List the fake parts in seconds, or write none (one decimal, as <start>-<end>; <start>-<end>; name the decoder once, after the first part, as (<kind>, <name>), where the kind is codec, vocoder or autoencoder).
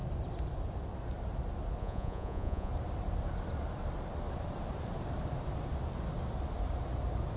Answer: 1.8-2.7 (vocoder, Vocos)